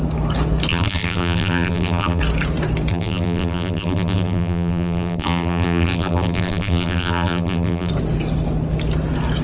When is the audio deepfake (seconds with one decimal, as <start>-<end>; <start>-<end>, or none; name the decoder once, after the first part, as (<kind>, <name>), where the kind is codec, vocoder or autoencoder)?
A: 0.7-2.2 (vocoder, BigVGAN v2); 2.9-7.9